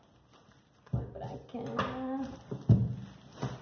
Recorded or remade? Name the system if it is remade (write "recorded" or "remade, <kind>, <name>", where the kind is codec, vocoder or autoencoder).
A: recorded